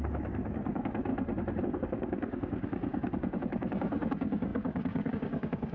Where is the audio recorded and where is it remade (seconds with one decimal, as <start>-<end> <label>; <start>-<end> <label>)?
0.0-1.1 remade; 1.1-1.6 recorded; 1.6-5.7 remade